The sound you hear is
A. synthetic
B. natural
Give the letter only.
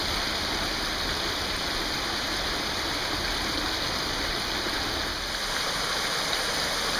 B